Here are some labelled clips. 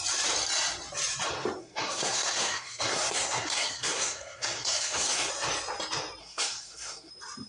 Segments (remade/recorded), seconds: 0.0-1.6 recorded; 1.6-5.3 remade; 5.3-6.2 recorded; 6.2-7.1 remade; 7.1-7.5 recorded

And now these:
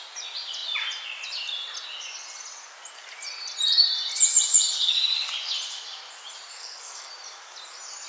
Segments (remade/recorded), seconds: 0.0-6.5 recorded; 6.5-7.1 remade; 7.1-8.1 recorded

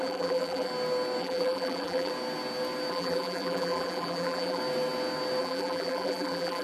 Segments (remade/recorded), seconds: 0.0-0.7 remade; 0.7-1.2 recorded; 1.2-2.1 remade; 2.1-2.9 recorded; 2.9-4.6 remade; 4.6-5.4 recorded; 5.4-6.6 remade

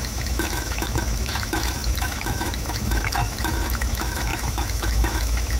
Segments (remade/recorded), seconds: 0.0-5.6 remade